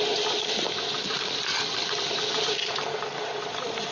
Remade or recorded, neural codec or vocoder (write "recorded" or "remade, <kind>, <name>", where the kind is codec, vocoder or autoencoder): recorded